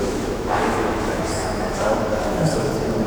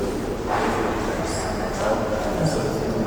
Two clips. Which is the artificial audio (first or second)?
first